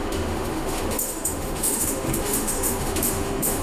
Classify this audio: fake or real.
fake